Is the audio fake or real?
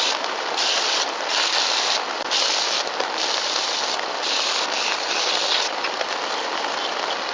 real